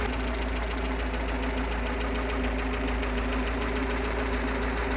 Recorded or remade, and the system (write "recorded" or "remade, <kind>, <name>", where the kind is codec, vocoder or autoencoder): recorded